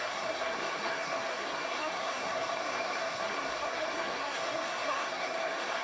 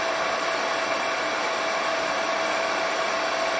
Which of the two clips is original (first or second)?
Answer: second